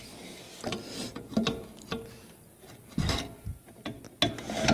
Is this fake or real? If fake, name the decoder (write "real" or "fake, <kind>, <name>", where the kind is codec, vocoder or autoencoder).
real